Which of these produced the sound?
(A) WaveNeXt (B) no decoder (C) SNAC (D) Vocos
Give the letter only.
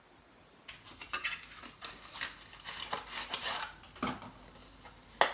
B